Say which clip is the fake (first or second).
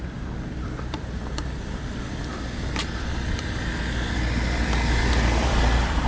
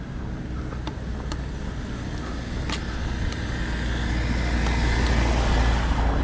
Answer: first